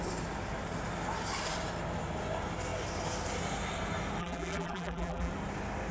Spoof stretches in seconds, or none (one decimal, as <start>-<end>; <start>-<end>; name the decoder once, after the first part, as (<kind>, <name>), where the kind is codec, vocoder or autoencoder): 4.2-5.3 (vocoder, BigVGAN v2)